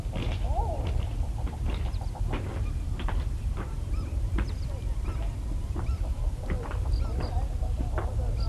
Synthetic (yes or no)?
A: yes